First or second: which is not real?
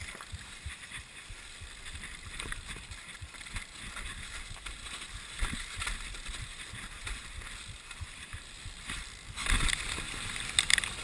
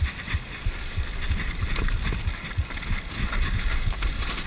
first